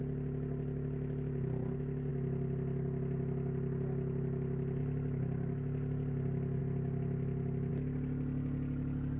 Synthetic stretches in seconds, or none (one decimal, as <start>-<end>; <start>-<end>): none